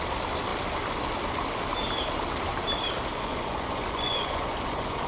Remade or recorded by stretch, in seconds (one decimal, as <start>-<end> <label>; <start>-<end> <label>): 0.0-3.1 recorded; 3.1-5.1 remade